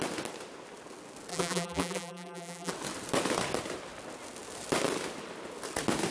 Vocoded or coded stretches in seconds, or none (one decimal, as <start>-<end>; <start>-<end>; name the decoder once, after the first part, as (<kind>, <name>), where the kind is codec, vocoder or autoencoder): 1.3-2.7 (vocoder, BigVGAN v2)